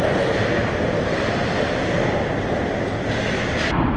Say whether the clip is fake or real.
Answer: real